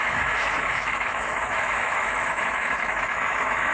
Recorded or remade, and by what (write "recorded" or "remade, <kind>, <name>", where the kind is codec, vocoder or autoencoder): remade, autoencoder, DAC-VAE